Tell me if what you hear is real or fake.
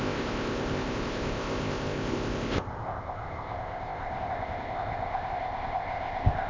fake